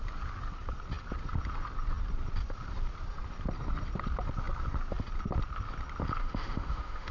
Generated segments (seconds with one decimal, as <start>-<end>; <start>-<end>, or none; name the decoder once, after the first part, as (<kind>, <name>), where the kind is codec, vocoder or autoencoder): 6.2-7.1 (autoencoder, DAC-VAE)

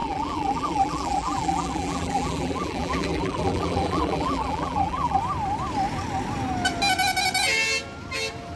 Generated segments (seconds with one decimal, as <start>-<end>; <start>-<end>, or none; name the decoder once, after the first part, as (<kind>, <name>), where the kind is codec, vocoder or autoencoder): 0.0-5.2 (vocoder, BigVGAN v2)

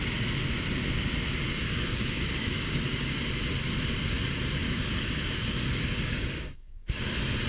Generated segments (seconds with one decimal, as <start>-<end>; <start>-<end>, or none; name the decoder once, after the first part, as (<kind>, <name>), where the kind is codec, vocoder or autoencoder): 1.5-3.1 (codec, DAC); 4.6-7.1

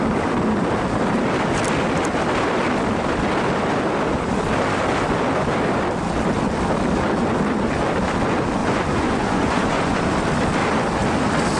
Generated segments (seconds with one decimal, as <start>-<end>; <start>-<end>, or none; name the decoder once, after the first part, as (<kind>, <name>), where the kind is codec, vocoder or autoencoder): 8.6-10.0 (vocoder, Vocos)